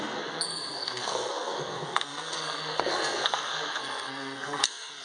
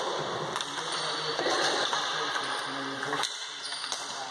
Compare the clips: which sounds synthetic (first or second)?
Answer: first